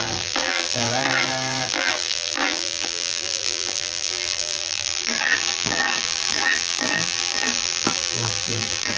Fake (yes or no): yes